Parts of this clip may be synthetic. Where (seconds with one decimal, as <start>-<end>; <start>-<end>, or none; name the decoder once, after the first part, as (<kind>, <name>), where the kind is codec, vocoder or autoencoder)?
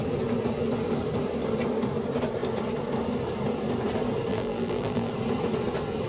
4.3-5.1 (vocoder, BigVGAN v2)